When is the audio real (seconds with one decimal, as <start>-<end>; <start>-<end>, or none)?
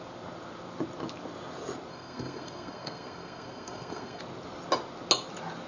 0.0-1.9; 4.2-5.7